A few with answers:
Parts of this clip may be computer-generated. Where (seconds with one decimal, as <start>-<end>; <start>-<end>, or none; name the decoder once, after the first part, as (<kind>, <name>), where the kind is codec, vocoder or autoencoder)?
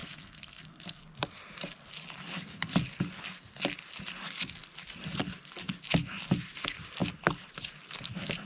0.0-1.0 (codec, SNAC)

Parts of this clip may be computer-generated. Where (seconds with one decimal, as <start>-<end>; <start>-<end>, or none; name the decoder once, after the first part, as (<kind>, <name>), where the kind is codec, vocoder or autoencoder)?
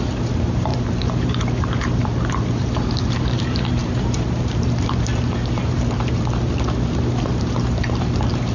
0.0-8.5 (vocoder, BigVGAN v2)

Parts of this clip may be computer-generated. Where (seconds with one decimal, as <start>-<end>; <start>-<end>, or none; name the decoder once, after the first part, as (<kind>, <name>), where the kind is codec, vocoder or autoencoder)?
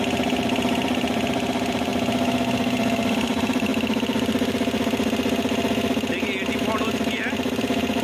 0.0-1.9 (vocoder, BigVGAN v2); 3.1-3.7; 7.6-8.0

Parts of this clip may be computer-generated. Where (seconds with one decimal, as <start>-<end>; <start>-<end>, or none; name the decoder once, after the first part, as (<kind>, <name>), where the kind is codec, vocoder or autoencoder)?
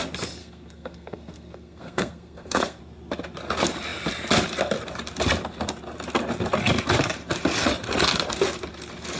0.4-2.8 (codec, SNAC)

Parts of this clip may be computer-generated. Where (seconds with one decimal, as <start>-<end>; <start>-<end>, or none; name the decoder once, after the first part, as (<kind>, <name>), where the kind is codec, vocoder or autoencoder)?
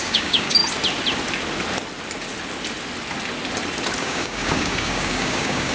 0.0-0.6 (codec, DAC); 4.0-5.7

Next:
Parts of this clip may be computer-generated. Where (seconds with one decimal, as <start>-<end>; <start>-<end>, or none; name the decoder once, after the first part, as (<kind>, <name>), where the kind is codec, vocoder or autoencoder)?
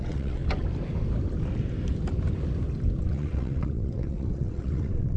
0.0-0.4 (vocoder, WaveNeXt); 3.0-5.2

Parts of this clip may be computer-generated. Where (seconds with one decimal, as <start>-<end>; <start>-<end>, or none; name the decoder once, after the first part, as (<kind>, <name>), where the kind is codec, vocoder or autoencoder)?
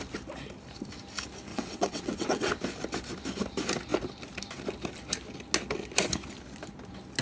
1.5-2.5 (vocoder, WaveNeXt)